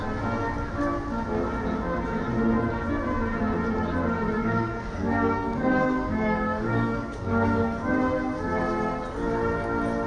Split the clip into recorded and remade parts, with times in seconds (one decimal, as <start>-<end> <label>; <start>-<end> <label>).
0.0-4.4 recorded; 4.4-7.9 remade; 7.9-10.1 recorded